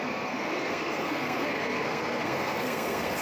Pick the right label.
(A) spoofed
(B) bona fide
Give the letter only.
A